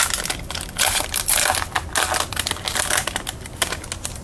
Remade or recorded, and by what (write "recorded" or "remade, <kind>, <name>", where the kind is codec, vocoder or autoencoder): recorded